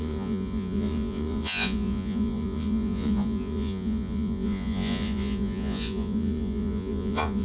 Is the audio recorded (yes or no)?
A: no